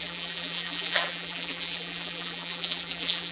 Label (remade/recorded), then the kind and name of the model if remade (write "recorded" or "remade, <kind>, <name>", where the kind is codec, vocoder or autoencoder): remade, vocoder, BigVGAN v2